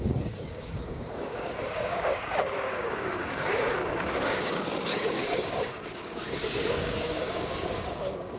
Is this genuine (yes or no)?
no